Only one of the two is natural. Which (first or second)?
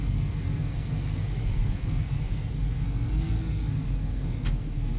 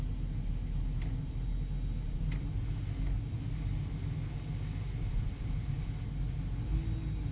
second